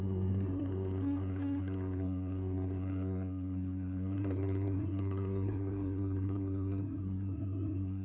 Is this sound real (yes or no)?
no